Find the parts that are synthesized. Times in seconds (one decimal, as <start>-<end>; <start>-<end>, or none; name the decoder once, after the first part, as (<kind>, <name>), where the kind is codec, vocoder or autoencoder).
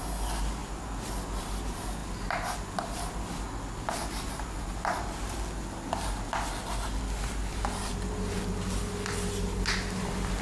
7.5-8.4 (vocoder, BigVGAN v2)